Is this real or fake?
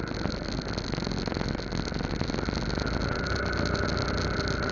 real